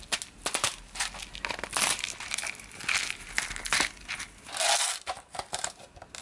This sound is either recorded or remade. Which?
recorded